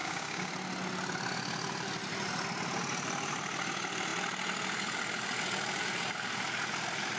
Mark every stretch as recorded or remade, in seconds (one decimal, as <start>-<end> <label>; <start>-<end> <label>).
0.0-0.5 remade; 0.5-7.2 recorded